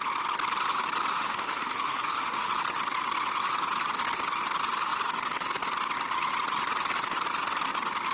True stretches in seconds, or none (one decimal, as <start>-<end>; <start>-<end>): 0.0-1.1; 2.5-8.1